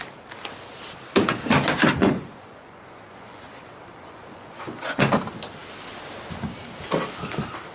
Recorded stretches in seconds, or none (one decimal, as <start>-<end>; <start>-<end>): 0.0-2.0; 5.1-7.7